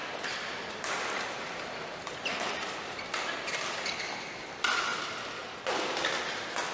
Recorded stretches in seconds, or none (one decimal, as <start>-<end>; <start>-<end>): 3.3-4.9; 5.8-6.7